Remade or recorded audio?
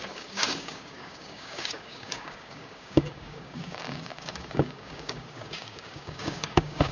remade